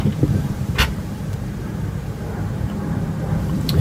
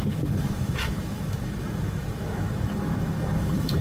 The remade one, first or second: second